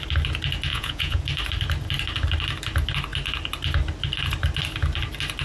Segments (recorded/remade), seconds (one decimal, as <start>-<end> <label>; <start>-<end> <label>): 0.0-0.7 recorded; 0.7-1.2 remade; 1.2-5.4 recorded